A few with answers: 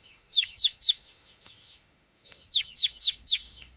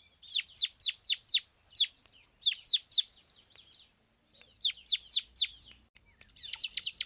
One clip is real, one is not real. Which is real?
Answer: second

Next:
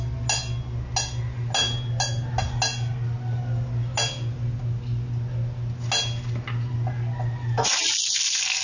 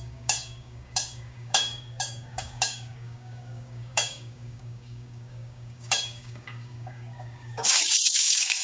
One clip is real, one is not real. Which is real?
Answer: first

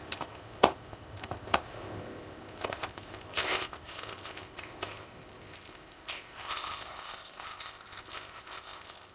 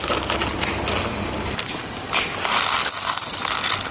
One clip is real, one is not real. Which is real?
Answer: second